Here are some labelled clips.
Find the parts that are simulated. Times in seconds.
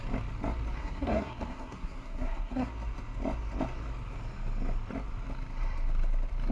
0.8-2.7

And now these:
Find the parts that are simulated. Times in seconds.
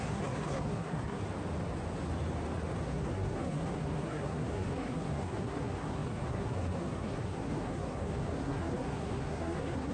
0.0-1.2; 2.8-9.9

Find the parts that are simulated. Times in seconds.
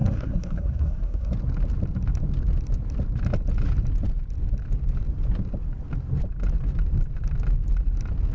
0.0-1.3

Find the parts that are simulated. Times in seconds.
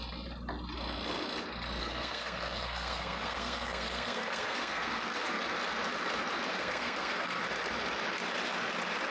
1.8-5.4; 6.5-7.4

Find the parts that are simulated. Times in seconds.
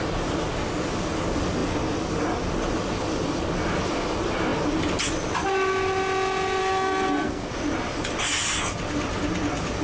6.6-7.5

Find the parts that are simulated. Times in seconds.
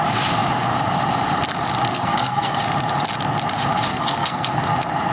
1.9-2.6; 3.9-4.6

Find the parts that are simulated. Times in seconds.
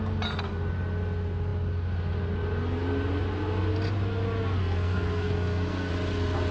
4.6-5.9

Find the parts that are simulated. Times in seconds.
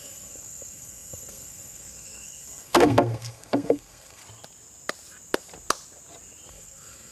0.0-4.2; 6.5-7.1